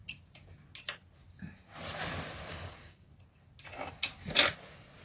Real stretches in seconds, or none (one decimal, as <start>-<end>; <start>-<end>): 0.0-2.5; 3.1-5.0